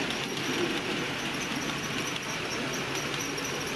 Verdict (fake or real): real